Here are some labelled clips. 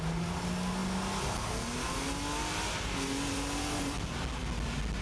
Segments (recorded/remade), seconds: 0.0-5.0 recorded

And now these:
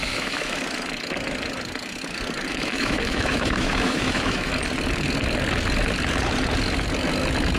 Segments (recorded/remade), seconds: 0.0-0.6 remade; 0.6-2.5 recorded; 2.5-4.5 remade; 4.5-7.6 recorded

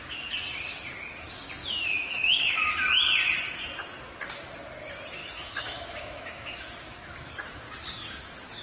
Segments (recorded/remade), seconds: 0.0-1.6 recorded; 1.6-2.7 remade; 2.7-5.2 recorded; 5.2-7.3 remade; 7.3-8.6 recorded

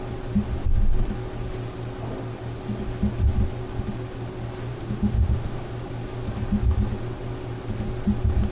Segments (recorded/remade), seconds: 0.0-4.7 recorded; 4.7-5.7 remade; 5.7-8.5 recorded

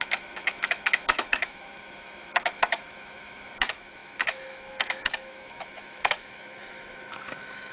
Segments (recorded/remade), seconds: 0.0-7.7 remade

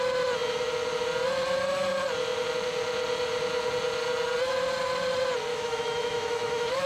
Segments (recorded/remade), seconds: 0.0-5.5 recorded; 5.5-6.9 remade